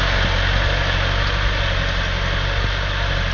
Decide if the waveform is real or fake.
real